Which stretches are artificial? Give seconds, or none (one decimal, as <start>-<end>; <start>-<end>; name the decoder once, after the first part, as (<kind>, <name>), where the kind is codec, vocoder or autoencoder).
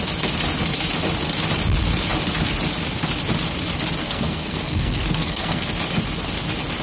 4.0-5.7 (codec, SNAC)